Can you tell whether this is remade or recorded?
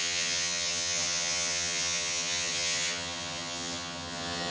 remade